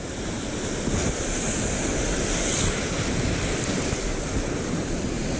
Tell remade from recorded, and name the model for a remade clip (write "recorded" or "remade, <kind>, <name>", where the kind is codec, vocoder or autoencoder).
recorded